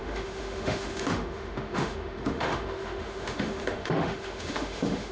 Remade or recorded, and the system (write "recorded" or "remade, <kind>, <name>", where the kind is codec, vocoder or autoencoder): remade, autoencoder, DAC-VAE